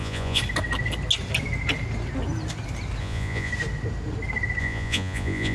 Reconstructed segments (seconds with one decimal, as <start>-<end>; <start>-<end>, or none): 0.0-0.4; 3.0-3.5; 4.6-5.5

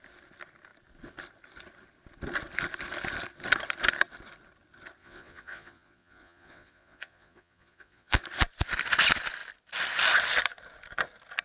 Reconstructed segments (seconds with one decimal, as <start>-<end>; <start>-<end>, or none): 5.0-8.2

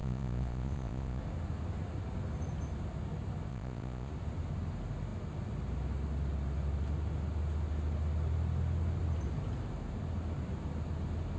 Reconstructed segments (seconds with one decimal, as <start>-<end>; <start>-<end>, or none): 0.0-1.2; 3.5-4.1

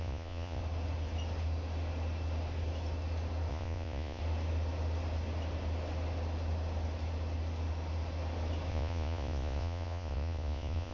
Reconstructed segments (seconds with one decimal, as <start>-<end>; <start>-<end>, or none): 0.0-0.6; 3.5-4.2; 8.7-10.9

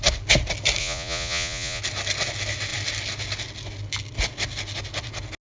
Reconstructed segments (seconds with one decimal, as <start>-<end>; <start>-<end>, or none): 0.8-1.8